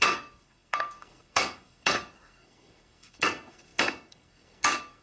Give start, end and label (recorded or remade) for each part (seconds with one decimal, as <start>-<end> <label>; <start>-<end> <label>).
0.0-5.0 remade